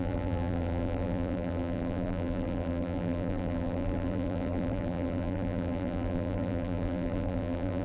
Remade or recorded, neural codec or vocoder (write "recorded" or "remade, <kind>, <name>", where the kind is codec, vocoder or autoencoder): remade, vocoder, BigVGAN v2